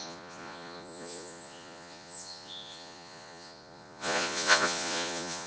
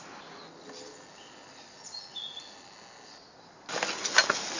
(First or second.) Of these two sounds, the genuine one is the second